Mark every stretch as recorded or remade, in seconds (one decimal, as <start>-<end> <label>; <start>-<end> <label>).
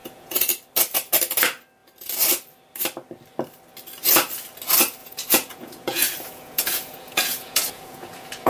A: 0.0-0.5 remade; 0.5-5.0 recorded; 5.0-8.5 remade